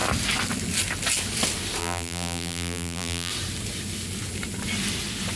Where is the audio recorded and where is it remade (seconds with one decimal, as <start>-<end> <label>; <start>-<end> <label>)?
0.0-1.8 recorded; 1.8-3.3 remade; 3.3-5.4 recorded